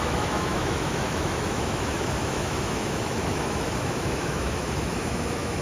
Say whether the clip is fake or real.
fake